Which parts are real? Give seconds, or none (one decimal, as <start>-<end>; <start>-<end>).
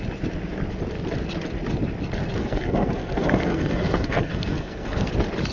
0.0-2.4; 5.1-5.5